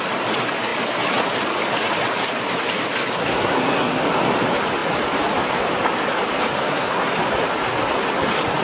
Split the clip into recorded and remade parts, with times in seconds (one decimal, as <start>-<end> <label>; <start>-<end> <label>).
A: 0.0-3.2 recorded; 3.2-4.0 remade; 4.0-6.6 recorded; 6.6-7.1 remade; 7.1-8.6 recorded